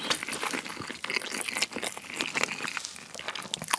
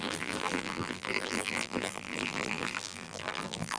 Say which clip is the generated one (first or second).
second